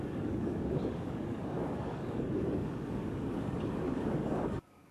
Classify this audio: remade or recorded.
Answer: remade